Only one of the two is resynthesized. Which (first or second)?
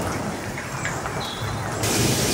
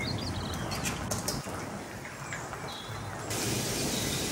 first